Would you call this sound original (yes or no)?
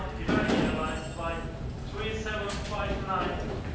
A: yes